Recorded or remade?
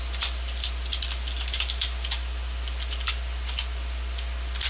recorded